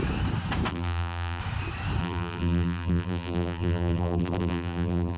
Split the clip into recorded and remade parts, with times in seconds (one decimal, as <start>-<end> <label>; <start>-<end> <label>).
0.0-0.7 recorded; 0.7-1.4 remade; 1.4-2.0 recorded; 2.0-5.2 remade